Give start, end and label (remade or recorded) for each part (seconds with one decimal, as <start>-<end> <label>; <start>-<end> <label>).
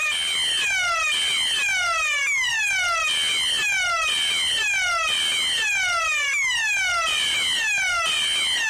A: 0.0-8.7 recorded